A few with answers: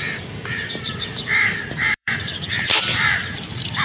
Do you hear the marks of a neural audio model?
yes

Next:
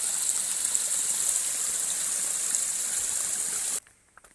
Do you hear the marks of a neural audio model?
yes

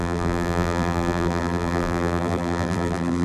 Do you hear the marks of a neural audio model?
yes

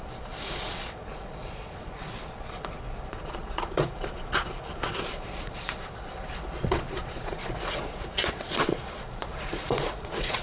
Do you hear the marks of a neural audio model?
yes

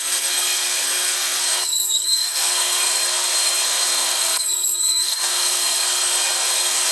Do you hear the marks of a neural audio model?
yes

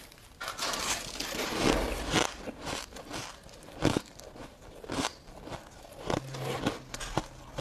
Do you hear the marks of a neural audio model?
no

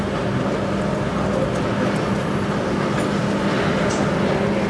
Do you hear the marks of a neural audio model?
no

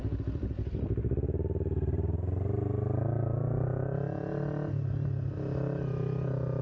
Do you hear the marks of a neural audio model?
no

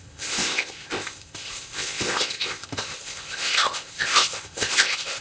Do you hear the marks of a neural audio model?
yes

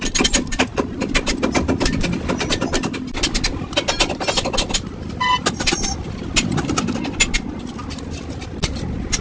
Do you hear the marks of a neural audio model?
no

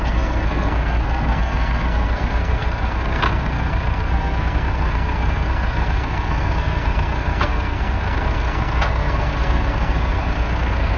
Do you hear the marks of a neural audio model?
yes